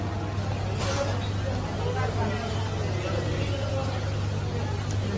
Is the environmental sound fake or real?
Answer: real